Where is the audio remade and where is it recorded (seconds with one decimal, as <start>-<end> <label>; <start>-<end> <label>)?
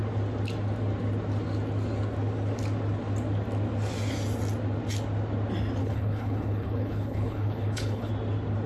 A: 0.0-5.8 recorded; 5.8-8.1 remade; 8.1-8.7 recorded